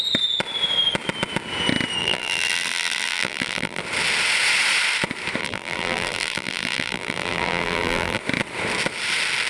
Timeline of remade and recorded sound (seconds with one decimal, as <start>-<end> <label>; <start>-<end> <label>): 0.0-2.0 recorded; 2.0-3.8 remade; 3.8-5.4 recorded; 5.4-8.2 remade; 8.2-9.5 recorded